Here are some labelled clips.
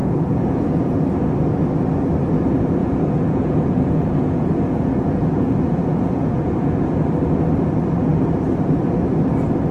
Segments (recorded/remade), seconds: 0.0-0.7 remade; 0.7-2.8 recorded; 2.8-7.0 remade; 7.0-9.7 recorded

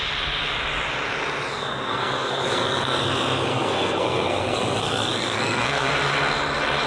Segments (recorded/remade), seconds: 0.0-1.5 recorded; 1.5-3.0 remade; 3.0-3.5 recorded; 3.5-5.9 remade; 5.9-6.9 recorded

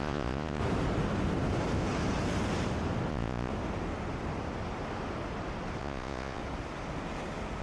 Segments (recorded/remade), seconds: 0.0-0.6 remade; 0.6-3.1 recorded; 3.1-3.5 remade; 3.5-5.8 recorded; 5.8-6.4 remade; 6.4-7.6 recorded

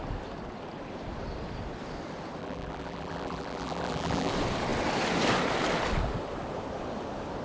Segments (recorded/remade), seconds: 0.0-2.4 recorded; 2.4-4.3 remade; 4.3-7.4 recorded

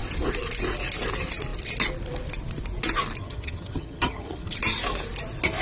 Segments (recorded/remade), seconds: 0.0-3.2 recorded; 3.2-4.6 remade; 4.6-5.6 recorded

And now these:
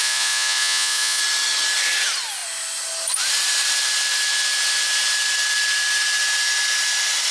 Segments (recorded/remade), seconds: 0.0-1.2 remade; 1.2-7.3 recorded